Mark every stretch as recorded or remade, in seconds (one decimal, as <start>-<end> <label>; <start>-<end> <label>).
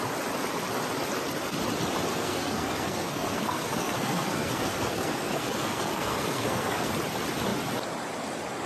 0.0-2.1 recorded; 2.1-6.9 remade; 6.9-8.7 recorded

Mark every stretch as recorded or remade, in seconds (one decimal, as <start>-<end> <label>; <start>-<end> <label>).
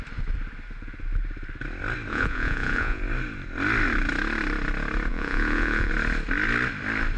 0.0-2.1 recorded; 2.1-3.0 remade; 3.0-5.1 recorded; 5.1-5.9 remade; 5.9-7.2 recorded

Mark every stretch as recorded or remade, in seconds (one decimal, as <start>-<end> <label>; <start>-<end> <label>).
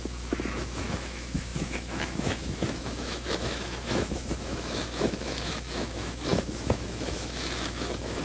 0.0-8.2 remade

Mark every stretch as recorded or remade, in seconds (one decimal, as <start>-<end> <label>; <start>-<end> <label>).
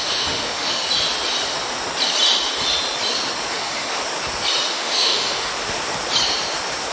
0.0-0.8 remade; 0.8-3.5 recorded; 3.5-4.0 remade; 4.0-4.7 recorded; 4.7-5.5 remade; 5.5-6.9 recorded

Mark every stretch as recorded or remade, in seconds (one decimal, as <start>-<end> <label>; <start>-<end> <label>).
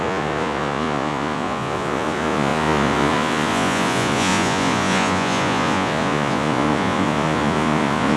0.0-8.2 remade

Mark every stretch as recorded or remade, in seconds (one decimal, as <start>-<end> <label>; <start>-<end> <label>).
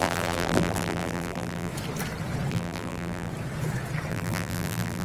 0.0-1.7 remade; 1.7-2.5 recorded; 2.5-3.3 remade; 3.3-4.1 recorded; 4.1-5.0 remade